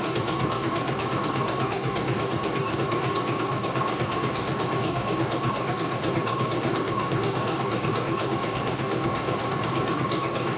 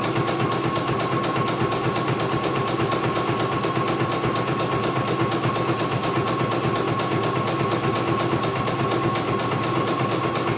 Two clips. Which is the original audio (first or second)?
second